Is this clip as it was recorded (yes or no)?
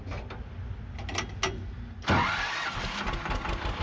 yes